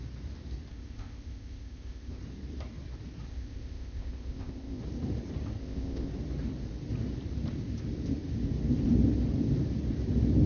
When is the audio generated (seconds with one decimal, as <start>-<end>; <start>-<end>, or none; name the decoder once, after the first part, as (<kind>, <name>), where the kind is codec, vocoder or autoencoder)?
0.7-2.2 (codec, ZipCodec); 3.3-4.8; 5.6-6.1